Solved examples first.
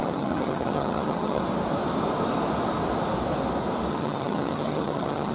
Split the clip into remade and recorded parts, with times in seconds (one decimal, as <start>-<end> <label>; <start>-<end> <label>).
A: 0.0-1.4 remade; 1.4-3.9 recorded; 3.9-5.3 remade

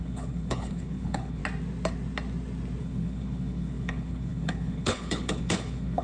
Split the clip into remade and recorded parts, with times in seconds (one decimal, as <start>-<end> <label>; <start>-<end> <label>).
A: 0.0-1.4 remade; 1.4-2.8 recorded; 2.8-6.0 remade

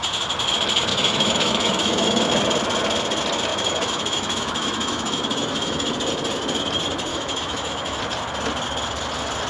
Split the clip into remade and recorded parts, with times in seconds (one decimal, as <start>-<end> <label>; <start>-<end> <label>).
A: 0.0-0.9 recorded; 0.9-2.3 remade; 2.3-3.5 recorded; 3.5-5.9 remade; 5.9-7.1 recorded; 7.1-8.0 remade; 8.0-9.5 recorded